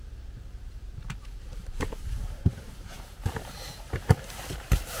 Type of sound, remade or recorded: remade